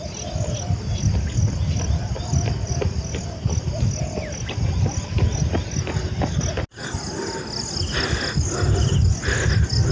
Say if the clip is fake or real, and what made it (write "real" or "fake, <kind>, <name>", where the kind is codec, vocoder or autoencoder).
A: real